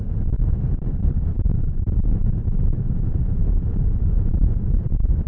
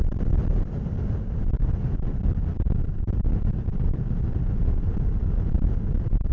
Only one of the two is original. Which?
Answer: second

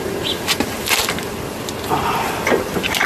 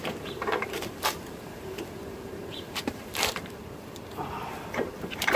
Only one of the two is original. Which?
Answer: first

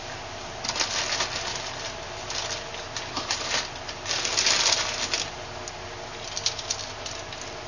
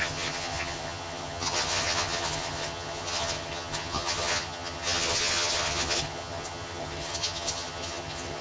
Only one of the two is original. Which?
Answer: first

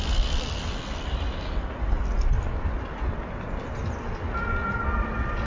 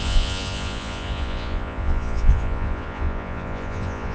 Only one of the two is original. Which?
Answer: first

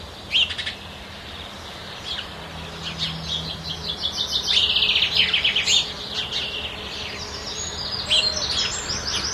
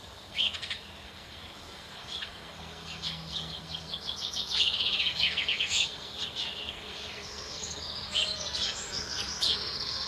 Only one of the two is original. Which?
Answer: first